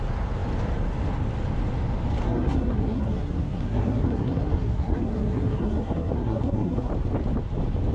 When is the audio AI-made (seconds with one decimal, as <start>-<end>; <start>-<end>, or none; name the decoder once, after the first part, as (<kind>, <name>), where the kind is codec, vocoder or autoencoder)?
2.2-6.9 (codec, SNAC)